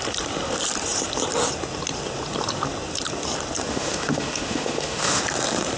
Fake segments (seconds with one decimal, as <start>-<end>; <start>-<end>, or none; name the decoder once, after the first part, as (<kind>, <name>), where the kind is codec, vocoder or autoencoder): 3.7-5.2 (autoencoder, DAC-VAE)